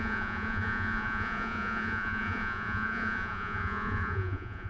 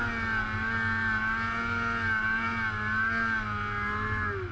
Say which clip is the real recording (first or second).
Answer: second